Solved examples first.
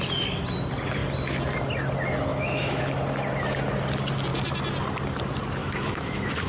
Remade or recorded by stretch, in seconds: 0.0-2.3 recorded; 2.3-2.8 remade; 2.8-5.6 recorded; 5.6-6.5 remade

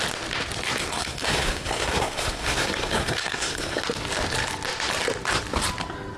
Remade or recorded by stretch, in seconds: 0.0-0.8 recorded; 0.8-3.8 remade; 3.8-6.2 recorded